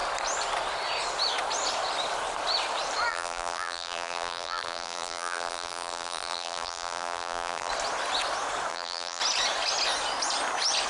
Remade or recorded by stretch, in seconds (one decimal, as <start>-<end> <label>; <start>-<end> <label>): 0.0-3.1 recorded; 3.1-7.7 remade; 7.7-8.7 recorded; 8.7-9.2 remade; 9.2-10.9 recorded